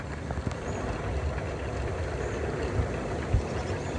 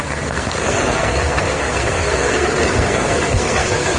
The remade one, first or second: second